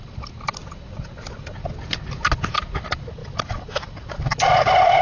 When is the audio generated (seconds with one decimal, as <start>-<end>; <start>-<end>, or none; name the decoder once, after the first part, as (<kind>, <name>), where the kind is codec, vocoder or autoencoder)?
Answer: none